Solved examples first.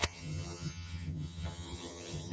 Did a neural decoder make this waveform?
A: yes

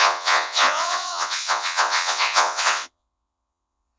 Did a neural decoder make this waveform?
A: yes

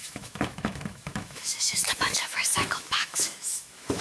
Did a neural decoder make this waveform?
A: yes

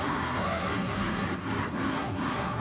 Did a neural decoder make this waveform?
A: yes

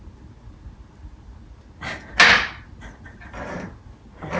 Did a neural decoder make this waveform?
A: no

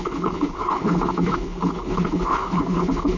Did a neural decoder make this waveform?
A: yes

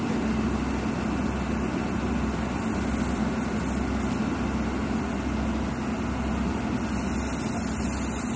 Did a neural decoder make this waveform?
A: no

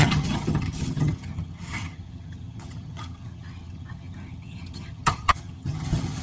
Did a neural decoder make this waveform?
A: yes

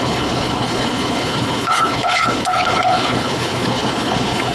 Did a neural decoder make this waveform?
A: yes